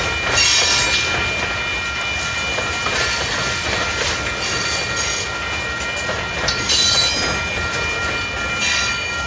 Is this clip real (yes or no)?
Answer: yes